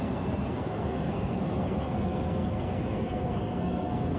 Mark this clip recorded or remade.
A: remade